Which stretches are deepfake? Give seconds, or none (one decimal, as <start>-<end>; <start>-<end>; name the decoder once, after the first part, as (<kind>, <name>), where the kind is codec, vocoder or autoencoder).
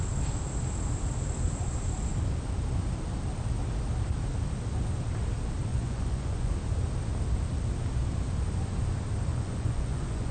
5.7-6.5 (vocoder, Vocos); 9.3-10.3